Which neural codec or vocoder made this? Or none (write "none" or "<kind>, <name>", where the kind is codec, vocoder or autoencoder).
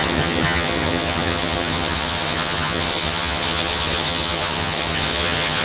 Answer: vocoder, HiFi-GAN